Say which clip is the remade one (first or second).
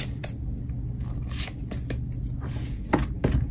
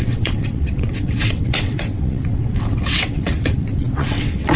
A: second